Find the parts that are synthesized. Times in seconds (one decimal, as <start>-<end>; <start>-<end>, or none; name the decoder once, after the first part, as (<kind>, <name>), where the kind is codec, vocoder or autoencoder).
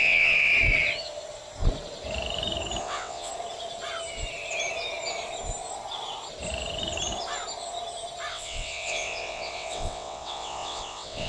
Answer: 0.0-0.5 (vocoder, WaveNeXt); 2.8-3.3; 8.3-11.3